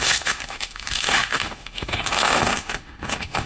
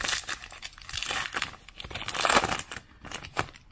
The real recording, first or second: second